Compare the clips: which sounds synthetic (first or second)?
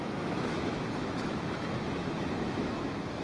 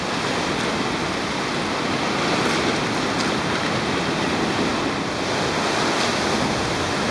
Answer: first